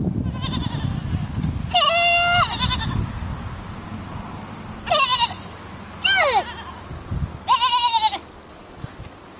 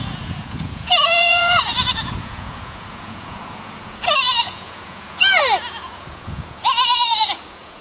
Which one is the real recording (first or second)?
first